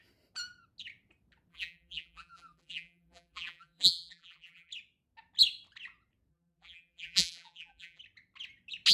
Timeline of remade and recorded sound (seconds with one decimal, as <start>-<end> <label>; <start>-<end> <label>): 0.0-1.5 recorded; 1.5-4.7 remade; 4.7-6.3 recorded; 6.3-8.0 remade; 8.0-8.9 recorded